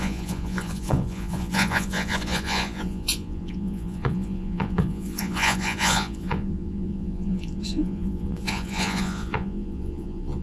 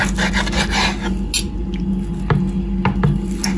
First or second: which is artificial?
first